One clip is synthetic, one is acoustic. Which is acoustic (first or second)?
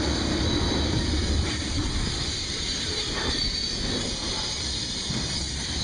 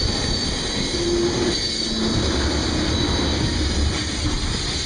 second